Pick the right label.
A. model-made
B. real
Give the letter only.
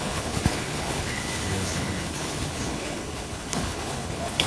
A